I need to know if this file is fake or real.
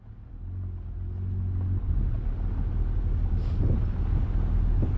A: real